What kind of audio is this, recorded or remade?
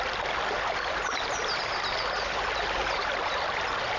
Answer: recorded